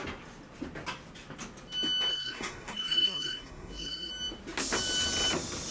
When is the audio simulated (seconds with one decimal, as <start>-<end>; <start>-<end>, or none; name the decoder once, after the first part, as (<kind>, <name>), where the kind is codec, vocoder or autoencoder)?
2.1-4.1 (codec, SNAC)

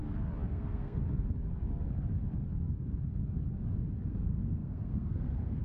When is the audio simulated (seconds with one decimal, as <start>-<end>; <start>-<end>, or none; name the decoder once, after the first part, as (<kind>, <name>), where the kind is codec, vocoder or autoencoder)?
0.5-1.0 (codec, SNAC); 4.1-5.6

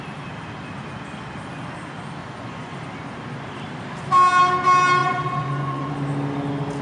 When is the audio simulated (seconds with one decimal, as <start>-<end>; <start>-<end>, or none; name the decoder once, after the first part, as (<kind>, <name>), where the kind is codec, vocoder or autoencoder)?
2.2-2.8 (vocoder, Vocos); 5.0-5.9